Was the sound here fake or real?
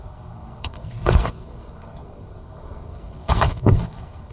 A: fake